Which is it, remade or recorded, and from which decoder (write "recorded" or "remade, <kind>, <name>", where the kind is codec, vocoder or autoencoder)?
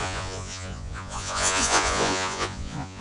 remade, vocoder, Vocos